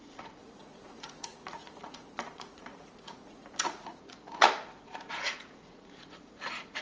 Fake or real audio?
fake